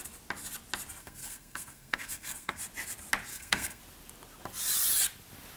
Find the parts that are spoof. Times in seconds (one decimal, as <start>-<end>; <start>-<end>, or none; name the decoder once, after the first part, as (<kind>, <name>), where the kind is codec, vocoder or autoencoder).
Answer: 1.0-2.6 (codec, SNAC); 3.3-3.8

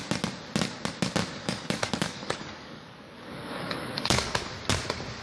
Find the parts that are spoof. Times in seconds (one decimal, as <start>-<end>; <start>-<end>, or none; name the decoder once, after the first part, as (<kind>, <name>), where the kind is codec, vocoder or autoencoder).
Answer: 1.4-4.5 (codec, DAC)

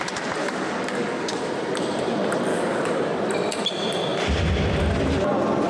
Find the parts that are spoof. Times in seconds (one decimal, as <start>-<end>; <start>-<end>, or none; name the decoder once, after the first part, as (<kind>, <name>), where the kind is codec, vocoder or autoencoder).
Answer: 0.4-1.5 (codec, DAC); 2.5-3.2

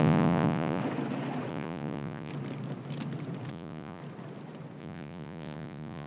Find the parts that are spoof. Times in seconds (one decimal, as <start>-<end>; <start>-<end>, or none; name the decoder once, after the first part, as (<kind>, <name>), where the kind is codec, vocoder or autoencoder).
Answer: 0.0-0.8 (vocoder, Vocos); 1.5-2.3; 3.5-4.0; 4.8-6.1

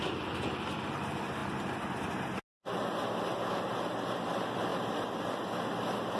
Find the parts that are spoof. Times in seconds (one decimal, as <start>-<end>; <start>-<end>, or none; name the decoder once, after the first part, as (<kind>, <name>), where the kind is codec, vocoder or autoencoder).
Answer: none

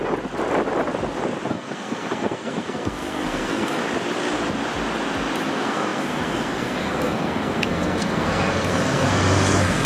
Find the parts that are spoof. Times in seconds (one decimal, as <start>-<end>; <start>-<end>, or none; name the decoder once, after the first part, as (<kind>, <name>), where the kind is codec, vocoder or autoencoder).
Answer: 1.5-3.8 (codec, SNAC); 5.5-9.9

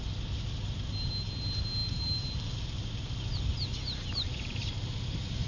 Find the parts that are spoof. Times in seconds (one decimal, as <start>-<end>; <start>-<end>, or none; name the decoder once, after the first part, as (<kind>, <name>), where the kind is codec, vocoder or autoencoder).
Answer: none